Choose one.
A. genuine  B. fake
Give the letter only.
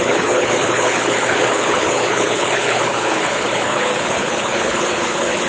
B